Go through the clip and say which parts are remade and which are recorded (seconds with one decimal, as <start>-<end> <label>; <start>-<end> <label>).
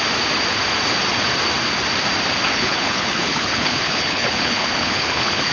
0.0-2.5 recorded; 2.5-5.5 remade